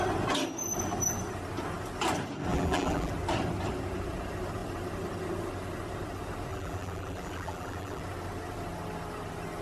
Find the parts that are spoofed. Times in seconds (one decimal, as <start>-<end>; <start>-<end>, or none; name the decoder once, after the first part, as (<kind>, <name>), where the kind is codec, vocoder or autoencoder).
2.5-3.1 (vocoder, BigVGAN v2); 6.5-8.0